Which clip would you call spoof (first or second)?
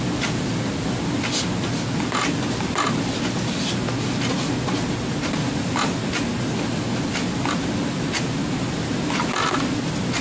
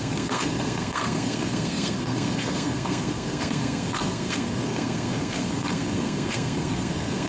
second